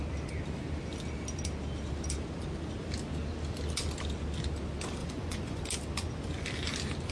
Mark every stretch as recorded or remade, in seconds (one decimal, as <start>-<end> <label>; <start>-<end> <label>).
0.0-5.0 recorded; 5.0-5.6 remade; 5.6-7.1 recorded